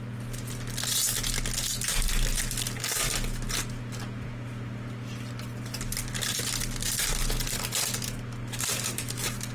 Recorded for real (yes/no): yes